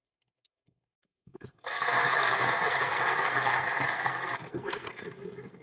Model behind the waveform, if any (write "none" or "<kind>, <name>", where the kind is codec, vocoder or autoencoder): codec, SNAC